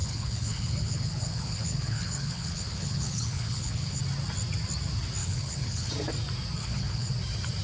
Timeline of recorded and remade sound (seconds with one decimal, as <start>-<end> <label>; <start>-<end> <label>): 0.0-4.0 remade; 4.0-5.2 recorded; 5.2-5.9 remade; 5.9-6.6 recorded; 6.6-7.1 remade; 7.1-7.6 recorded